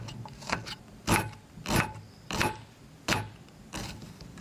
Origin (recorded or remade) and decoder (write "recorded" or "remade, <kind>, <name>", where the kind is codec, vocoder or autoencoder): recorded